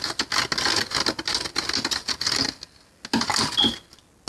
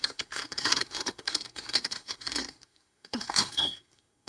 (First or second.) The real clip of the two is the first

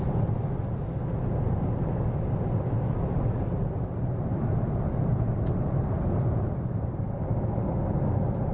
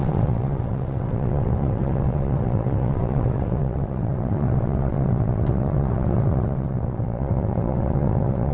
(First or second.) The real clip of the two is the first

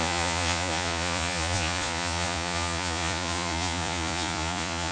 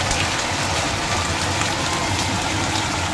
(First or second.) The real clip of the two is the second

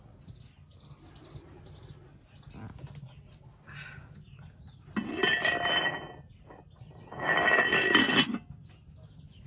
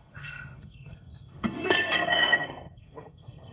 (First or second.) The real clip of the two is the first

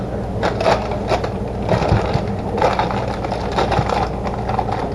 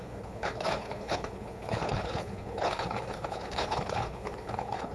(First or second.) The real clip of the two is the first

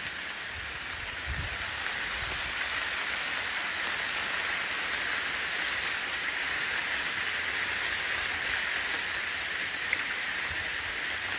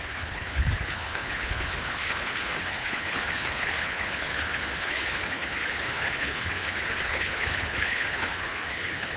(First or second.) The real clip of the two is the first